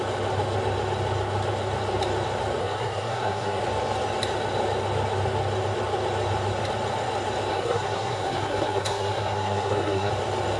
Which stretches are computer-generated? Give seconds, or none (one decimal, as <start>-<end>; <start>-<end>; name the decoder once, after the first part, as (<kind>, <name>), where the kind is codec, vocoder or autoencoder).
2.6-3.6 (codec, SNAC); 7.5-10.1